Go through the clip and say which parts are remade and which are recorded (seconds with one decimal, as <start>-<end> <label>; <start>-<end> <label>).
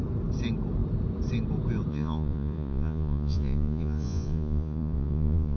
0.0-1.9 recorded; 1.9-5.6 remade